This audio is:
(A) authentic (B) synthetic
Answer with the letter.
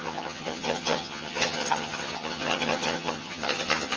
B